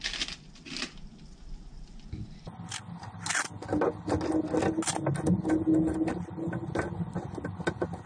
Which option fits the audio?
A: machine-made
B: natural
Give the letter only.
B